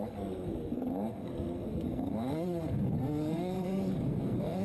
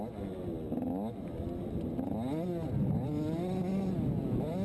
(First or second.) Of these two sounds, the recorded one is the second